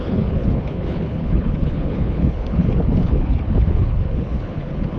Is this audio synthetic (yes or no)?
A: yes